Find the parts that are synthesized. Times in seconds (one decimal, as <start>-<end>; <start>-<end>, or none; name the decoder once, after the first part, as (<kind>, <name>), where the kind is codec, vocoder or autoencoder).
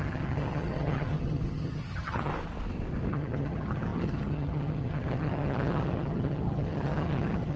0.0-2.3 (vocoder, HiFi-GAN); 3.1-7.6